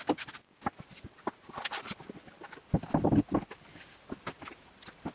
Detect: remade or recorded recorded